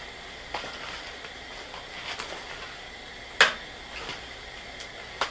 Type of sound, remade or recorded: recorded